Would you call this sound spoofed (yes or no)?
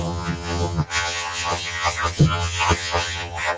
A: yes